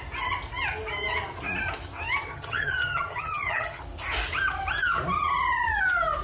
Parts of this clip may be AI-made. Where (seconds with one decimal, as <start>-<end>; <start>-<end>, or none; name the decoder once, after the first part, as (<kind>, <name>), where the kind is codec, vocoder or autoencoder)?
2.3-3.8 (vocoder, HiFi-GAN)